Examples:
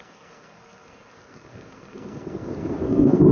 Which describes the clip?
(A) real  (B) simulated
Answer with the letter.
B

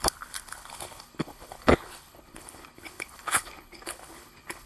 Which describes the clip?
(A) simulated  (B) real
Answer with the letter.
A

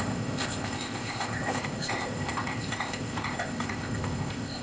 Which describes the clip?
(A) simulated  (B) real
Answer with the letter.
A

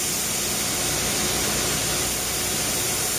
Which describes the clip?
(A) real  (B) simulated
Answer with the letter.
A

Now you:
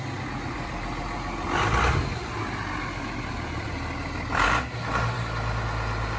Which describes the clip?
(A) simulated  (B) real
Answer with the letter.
B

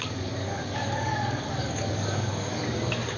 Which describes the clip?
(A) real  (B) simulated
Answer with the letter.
B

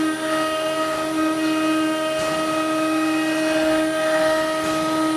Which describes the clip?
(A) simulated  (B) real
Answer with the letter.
B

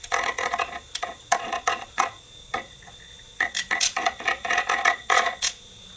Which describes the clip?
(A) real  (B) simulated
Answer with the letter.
B